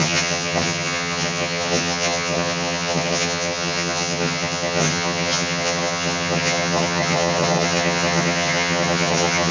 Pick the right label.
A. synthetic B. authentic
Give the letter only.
A